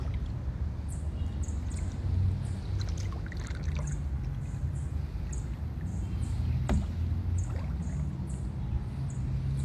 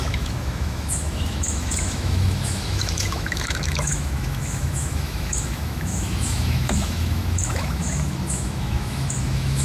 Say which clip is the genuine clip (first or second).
first